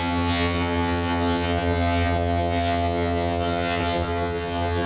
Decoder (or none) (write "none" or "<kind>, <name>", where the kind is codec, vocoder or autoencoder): vocoder, HiFi-GAN